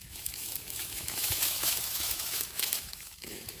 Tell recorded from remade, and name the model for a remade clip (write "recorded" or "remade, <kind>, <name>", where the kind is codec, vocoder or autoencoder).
remade, autoencoder, DAC-VAE